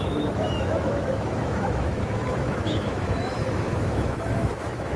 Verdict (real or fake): fake